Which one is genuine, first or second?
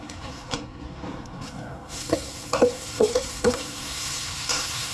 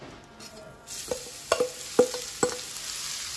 second